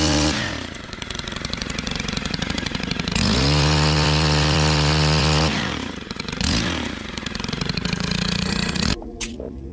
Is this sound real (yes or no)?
no